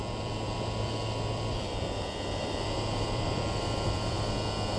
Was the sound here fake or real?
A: fake